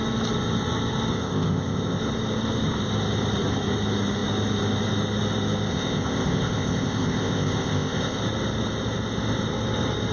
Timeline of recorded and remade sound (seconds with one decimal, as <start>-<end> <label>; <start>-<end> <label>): 0.0-1.1 recorded; 1.1-2.0 remade; 2.0-5.7 recorded; 5.7-8.2 remade; 8.2-10.1 recorded

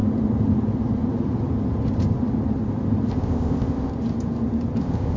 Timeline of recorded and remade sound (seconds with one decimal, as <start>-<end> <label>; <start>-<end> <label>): 0.0-3.1 recorded; 3.1-3.9 remade; 3.9-4.8 recorded; 4.8-5.2 remade

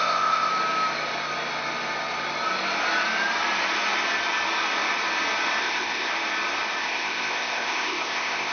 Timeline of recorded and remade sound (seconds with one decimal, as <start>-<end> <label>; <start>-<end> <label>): 0.0-0.5 remade; 0.5-5.6 recorded; 5.6-6.1 remade; 6.1-6.8 recorded; 6.8-8.5 remade

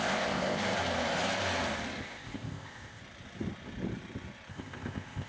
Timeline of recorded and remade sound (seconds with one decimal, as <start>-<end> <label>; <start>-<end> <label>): 0.0-0.6 remade; 0.6-2.0 recorded; 2.0-3.0 remade; 3.0-4.5 recorded; 4.5-5.3 remade